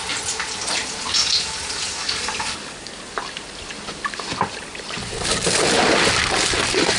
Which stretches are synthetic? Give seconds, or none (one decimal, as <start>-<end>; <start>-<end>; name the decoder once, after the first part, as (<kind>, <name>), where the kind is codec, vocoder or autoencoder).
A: 2.0-2.9 (codec, DAC)